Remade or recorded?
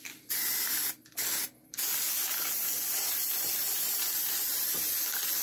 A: recorded